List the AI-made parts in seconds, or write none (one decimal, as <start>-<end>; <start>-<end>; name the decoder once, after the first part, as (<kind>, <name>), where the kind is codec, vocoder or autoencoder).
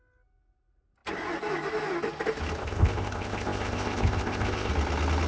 2.6-4.7 (codec, ZipCodec)